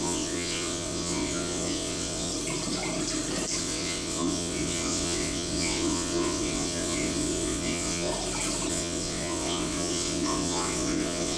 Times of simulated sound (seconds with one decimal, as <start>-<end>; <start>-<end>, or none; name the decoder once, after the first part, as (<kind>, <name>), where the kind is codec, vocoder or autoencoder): 0.0-2.3 (vocoder, WaveNeXt); 3.6-8.1; 8.7-11.4